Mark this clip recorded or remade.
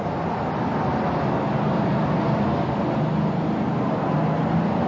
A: recorded